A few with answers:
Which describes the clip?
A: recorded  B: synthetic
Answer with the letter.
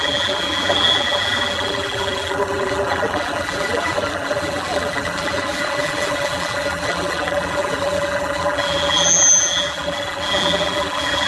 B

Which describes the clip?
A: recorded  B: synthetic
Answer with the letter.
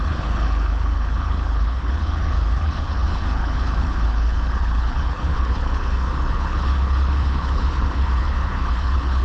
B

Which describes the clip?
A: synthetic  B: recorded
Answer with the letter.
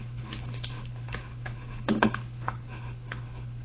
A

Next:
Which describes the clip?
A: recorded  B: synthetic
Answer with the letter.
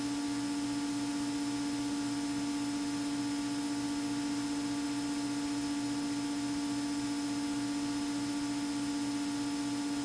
A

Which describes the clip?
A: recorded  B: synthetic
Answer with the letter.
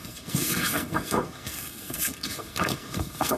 B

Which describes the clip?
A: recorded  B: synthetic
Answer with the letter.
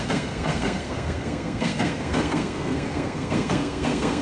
B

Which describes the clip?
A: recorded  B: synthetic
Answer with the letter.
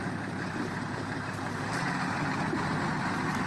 B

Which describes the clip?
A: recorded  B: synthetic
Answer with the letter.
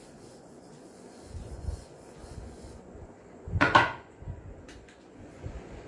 B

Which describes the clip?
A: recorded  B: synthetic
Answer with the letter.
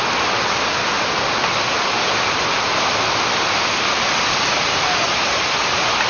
A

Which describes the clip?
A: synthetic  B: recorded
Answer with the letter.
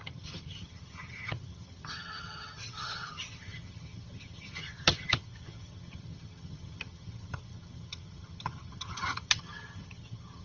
A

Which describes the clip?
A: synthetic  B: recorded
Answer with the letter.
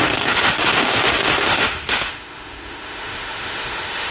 A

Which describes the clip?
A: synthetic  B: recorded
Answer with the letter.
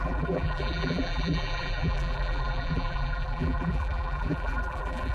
A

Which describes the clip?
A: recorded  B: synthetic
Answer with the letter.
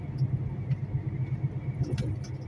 A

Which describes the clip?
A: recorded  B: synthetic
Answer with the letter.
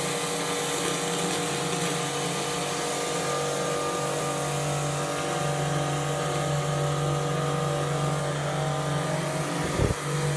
A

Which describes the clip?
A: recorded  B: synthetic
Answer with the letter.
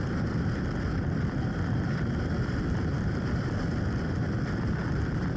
A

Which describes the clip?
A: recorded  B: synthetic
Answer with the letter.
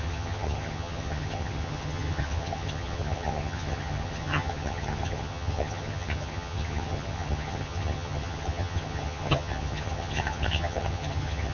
B